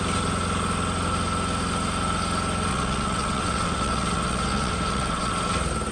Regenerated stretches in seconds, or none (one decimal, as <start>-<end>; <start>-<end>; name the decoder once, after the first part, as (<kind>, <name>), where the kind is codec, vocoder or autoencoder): 2.7-5.3 (vocoder, WaveNeXt)

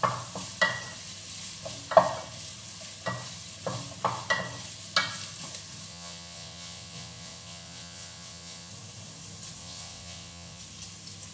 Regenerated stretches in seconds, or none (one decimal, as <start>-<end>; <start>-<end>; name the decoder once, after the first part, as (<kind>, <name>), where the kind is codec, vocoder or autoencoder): 5.9-8.7 (vocoder, WaveNeXt); 9.6-10.6

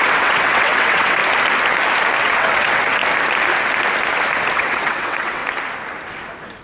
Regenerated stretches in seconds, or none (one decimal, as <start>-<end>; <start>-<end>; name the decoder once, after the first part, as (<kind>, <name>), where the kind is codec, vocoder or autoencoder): 0.0-1.2 (vocoder, WaveNeXt); 2.2-3.0; 4.5-5.4

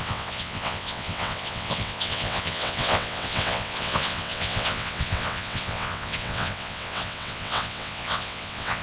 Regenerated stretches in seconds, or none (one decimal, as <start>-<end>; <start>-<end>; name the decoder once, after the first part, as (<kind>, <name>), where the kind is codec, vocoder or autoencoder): 0.0-8.8 (vocoder, WaveNeXt)

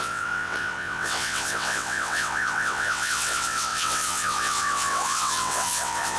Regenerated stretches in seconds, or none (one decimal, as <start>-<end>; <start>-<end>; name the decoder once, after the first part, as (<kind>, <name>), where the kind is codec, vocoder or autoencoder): 0.0-6.2 (vocoder, WaveNeXt)